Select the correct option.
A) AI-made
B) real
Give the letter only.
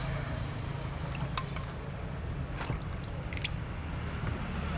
B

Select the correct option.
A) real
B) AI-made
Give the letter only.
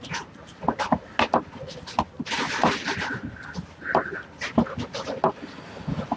A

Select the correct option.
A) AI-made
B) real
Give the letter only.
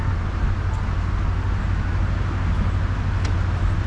B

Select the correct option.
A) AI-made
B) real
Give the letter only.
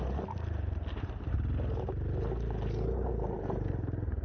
B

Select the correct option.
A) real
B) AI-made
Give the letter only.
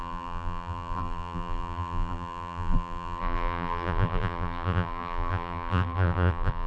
B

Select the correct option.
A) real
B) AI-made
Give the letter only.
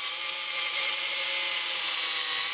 A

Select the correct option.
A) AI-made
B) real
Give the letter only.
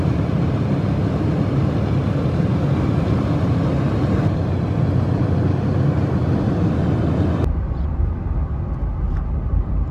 B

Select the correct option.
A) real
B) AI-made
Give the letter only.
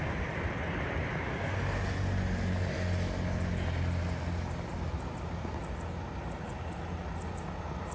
A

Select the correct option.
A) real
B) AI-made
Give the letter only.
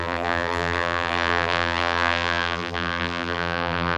B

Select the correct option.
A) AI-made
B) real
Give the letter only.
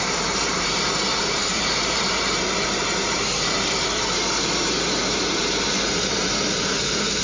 A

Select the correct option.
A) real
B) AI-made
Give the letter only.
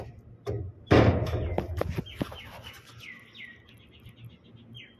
A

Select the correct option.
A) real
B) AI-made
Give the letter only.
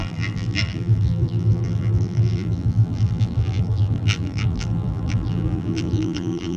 B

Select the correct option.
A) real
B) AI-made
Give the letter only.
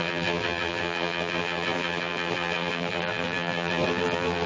B